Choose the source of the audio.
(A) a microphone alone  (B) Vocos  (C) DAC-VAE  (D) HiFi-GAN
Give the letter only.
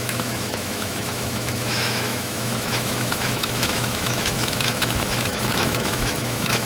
C